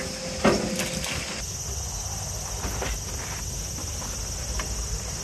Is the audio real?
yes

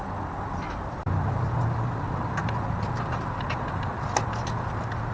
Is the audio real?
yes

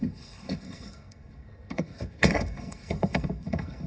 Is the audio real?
no